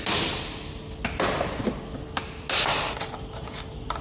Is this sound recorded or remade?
recorded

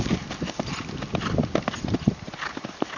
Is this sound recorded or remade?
recorded